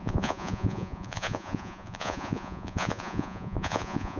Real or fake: fake